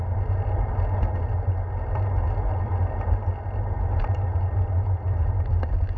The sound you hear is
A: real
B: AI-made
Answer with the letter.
A